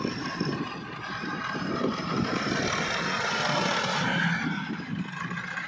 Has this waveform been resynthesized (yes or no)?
no